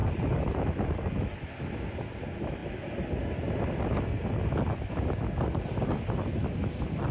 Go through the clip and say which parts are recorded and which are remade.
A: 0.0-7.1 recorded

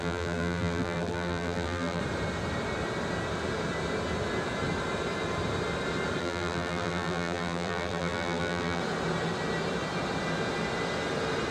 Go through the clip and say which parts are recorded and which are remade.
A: 0.0-2.0 remade; 2.0-6.2 recorded; 6.2-8.8 remade; 8.8-11.5 recorded